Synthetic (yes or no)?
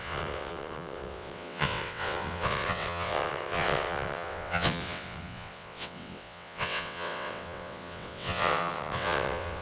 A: yes